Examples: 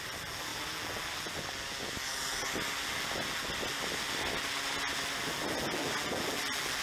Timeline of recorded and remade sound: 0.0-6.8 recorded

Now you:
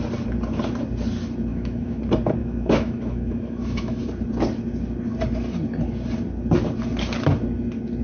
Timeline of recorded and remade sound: 0.0-1.5 recorded; 1.5-2.0 remade; 2.0-2.4 recorded; 2.4-4.0 remade; 4.0-8.0 recorded

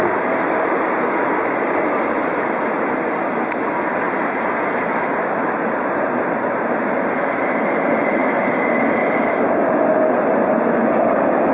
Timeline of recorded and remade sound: 0.0-11.5 recorded

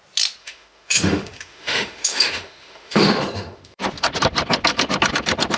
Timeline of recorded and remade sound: 0.0-0.4 recorded; 0.4-3.8 remade; 3.8-5.6 recorded

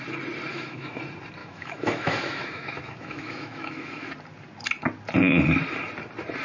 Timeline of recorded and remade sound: 0.0-0.5 recorded; 0.5-1.0 remade; 1.0-1.4 recorded; 1.4-4.1 remade; 4.1-6.4 recorded

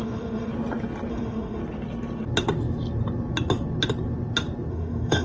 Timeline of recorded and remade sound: 0.0-0.5 remade; 0.5-1.1 recorded; 1.1-1.6 remade; 1.6-4.7 recorded; 4.7-5.2 remade

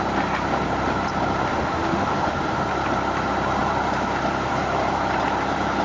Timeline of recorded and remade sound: 0.0-1.5 recorded; 1.5-2.6 remade; 2.6-5.8 recorded

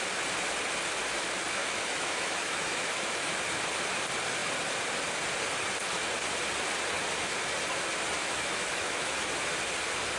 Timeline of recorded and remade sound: 0.0-1.6 recorded; 1.6-3.4 remade; 3.4-8.2 recorded; 8.2-9.1 remade; 9.1-10.2 recorded